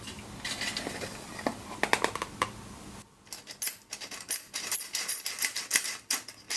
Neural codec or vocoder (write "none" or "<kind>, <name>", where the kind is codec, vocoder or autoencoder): none